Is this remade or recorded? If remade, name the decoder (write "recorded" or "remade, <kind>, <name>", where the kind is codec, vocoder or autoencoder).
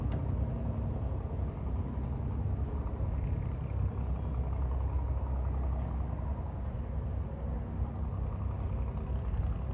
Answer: recorded